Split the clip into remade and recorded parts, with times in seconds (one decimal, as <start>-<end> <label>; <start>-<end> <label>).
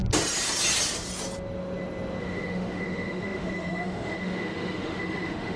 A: 0.0-2.2 recorded; 2.2-5.6 remade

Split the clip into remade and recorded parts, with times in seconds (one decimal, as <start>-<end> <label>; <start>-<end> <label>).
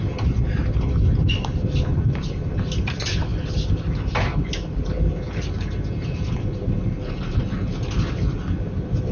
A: 0.0-9.1 recorded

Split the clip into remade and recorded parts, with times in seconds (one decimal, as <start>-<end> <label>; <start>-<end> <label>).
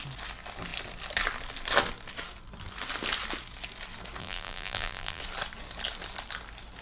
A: 0.0-4.2 recorded; 4.2-5.2 remade; 5.2-6.8 recorded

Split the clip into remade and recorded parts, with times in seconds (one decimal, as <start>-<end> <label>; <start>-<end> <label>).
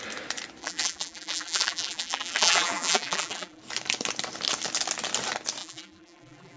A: 0.0-0.6 recorded; 0.6-3.6 remade; 3.6-5.6 recorded; 5.6-6.6 remade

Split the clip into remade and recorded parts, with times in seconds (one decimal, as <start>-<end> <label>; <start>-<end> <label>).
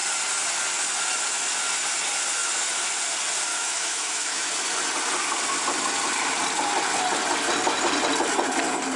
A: 0.0-3.5 recorded; 3.5-4.5 remade; 4.5-9.0 recorded